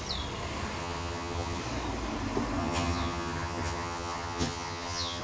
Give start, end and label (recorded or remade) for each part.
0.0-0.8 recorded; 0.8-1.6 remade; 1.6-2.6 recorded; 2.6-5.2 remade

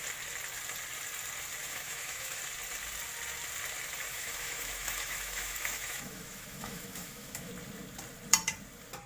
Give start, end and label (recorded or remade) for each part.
0.0-1.6 recorded; 1.6-2.4 remade; 2.4-4.1 recorded; 4.1-7.5 remade; 7.5-9.1 recorded

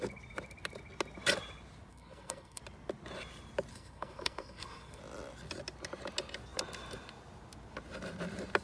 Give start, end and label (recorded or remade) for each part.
0.0-1.9 recorded; 1.9-2.6 remade; 2.6-3.7 recorded; 3.7-5.0 remade; 5.0-8.6 recorded

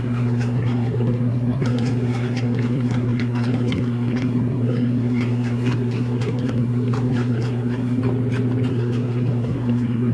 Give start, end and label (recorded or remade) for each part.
0.0-8.0 remade; 8.0-8.7 recorded; 8.7-10.1 remade

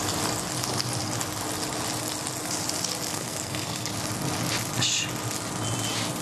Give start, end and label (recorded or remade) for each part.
0.0-3.1 recorded; 3.1-3.9 remade; 3.9-6.2 recorded